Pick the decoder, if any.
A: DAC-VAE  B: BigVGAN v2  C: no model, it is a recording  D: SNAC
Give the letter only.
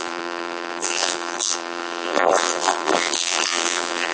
B